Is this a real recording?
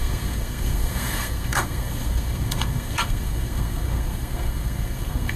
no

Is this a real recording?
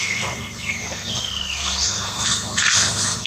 no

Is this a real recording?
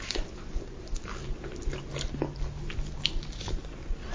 yes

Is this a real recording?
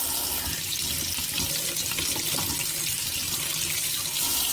yes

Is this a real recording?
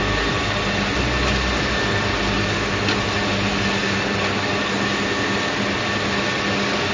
yes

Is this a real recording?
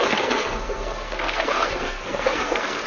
no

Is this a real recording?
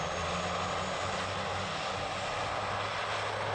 yes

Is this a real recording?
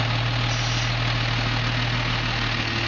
yes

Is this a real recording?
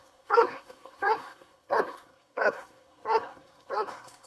no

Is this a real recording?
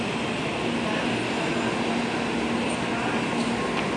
yes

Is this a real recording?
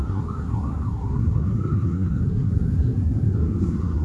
no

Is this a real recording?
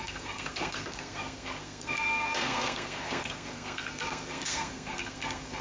no